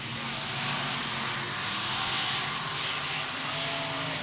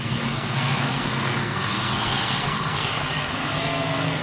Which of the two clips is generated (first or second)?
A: second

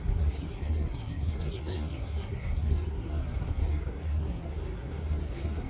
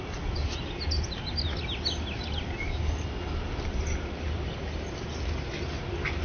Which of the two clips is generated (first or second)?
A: first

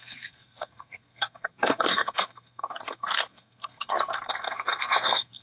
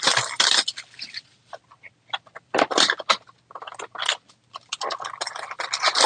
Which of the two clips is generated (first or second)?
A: first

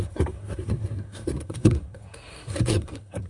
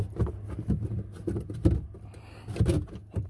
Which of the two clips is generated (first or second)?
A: first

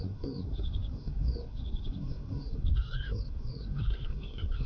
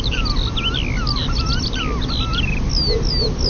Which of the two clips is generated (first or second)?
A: first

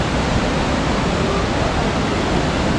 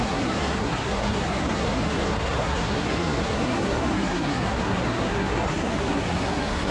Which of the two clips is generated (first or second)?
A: second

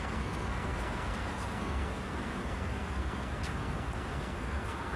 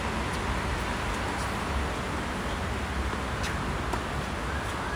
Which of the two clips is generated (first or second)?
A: first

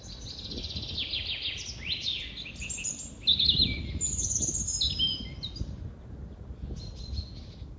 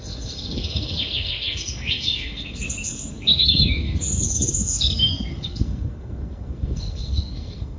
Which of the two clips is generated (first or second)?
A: second